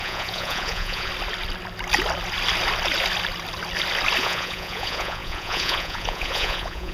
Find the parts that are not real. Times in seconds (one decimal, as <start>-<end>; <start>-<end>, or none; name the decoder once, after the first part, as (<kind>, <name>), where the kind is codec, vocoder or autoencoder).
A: 0.0-1.1 (vocoder, Vocos); 4.2-6.9

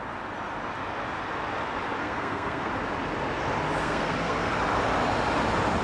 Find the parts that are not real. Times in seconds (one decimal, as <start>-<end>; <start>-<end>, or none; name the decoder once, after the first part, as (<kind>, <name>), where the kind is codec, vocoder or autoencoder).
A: 2.0-2.7 (codec, SNAC); 3.8-4.5

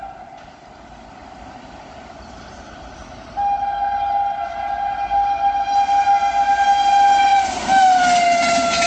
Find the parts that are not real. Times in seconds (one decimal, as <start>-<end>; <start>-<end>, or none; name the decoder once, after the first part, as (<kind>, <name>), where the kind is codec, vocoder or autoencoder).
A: none

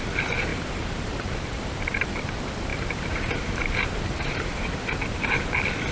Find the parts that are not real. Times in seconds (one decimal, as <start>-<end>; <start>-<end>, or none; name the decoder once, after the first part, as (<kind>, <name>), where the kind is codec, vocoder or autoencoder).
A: 0.5-2.1 (vocoder, BigVGAN v2); 2.7-5.5

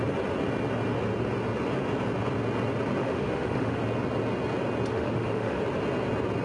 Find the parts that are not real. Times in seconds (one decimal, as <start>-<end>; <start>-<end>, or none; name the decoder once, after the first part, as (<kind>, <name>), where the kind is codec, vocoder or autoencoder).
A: 3.0-3.8 (autoencoder, DAC-VAE); 4.9-5.6

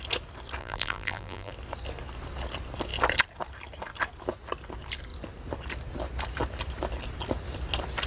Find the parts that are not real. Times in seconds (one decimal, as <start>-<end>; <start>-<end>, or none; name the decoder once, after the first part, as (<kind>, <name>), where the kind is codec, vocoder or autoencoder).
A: 0.6-1.5 (vocoder, BigVGAN v2)

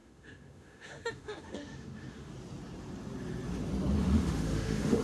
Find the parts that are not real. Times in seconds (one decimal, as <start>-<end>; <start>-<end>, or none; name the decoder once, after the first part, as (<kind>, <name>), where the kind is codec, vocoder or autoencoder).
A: 0.0-2.3 (autoencoder, DAC-VAE); 4.0-5.0

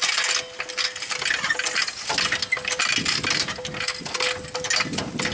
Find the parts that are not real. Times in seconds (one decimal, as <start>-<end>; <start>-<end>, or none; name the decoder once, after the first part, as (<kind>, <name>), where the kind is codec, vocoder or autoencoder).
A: none